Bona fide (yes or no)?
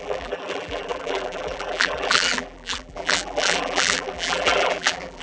no